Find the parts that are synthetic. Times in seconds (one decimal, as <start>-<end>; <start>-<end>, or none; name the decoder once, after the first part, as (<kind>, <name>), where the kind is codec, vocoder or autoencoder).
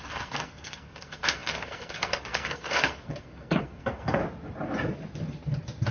0.0-4.2 (codec, SNAC)